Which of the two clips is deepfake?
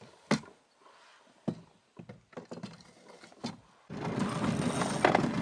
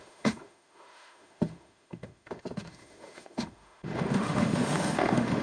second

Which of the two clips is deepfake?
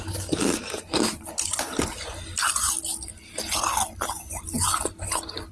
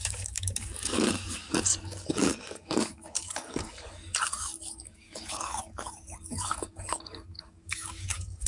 second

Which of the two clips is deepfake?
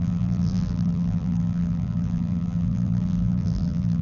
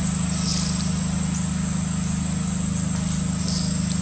first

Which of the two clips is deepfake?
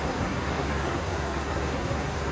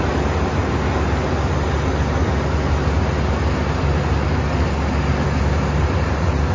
first